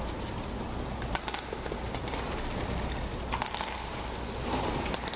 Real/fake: real